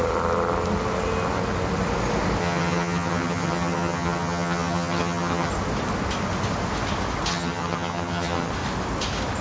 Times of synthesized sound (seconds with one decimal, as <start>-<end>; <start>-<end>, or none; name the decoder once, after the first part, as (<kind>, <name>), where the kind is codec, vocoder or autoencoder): 2.4-5.5 (vocoder, HiFi-GAN); 7.3-8.5